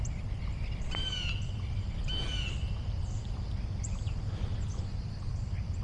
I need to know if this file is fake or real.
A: real